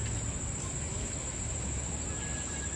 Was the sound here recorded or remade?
recorded